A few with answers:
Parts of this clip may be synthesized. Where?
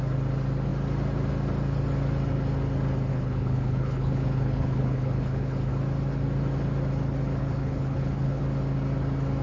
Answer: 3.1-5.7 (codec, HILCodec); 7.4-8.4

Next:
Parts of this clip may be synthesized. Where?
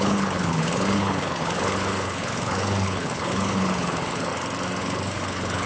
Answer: 0.0-4.3 (codec, HILCodec); 4.8-5.7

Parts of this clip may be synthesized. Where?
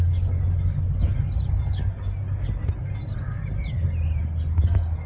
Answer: none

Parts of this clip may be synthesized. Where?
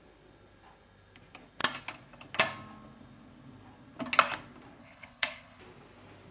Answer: 4.8-5.6 (codec, HILCodec)